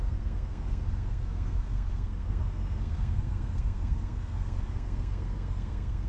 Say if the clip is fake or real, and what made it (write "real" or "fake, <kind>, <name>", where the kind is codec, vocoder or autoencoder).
fake, codec, SNAC